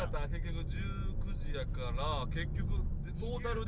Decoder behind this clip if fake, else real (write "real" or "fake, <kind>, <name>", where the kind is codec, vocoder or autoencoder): real